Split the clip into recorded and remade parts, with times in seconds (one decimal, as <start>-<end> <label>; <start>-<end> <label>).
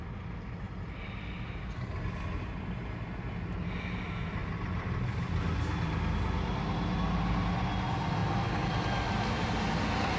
0.0-10.2 recorded